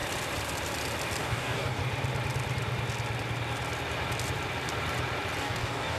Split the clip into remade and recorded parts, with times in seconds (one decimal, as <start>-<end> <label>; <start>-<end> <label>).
0.0-1.2 recorded; 1.2-1.8 remade; 1.8-5.4 recorded; 5.4-6.0 remade

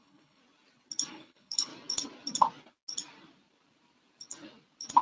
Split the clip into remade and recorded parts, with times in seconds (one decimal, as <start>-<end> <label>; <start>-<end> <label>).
0.0-0.4 remade; 0.4-1.1 recorded; 1.1-1.7 remade; 1.7-5.0 recorded

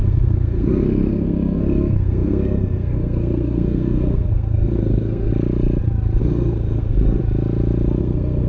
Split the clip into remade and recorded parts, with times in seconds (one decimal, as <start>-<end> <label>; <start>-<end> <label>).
0.0-5.3 remade; 5.3-6.2 recorded; 6.2-7.2 remade; 7.2-8.0 recorded; 8.0-8.5 remade

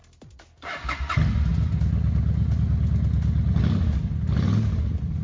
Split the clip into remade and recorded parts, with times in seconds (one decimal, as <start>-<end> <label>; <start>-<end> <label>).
0.0-5.2 recorded